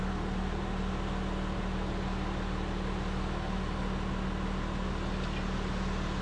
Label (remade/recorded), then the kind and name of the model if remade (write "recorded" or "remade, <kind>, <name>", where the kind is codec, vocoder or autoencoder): recorded